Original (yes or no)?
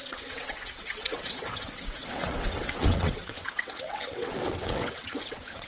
no